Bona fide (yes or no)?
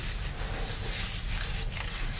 yes